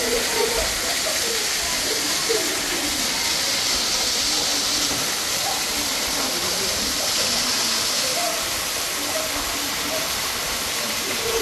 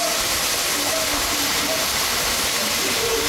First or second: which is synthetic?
first